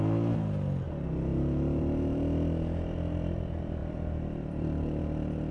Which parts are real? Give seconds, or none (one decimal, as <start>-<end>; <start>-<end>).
0.0-3.8; 5.0-5.5